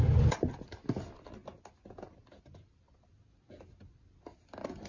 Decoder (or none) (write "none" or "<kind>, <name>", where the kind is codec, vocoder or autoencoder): none